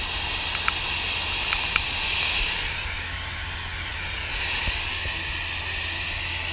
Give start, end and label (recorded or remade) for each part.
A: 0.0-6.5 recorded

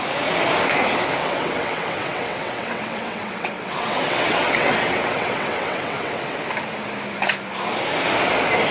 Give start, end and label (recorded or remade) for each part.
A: 0.0-1.2 recorded; 1.2-6.4 remade; 6.4-8.7 recorded

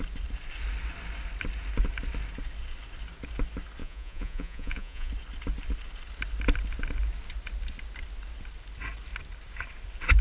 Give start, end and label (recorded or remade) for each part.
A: 0.0-3.8 recorded; 3.8-5.1 remade; 5.1-10.2 recorded

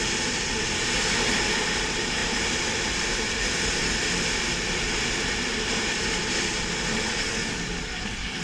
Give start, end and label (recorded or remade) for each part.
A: 0.0-6.9 recorded; 6.9-8.4 remade